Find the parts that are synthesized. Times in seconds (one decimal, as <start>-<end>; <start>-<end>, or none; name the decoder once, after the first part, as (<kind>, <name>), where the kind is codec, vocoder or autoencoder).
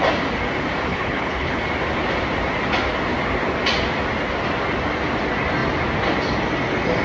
0.9-1.6 (codec, HILCodec)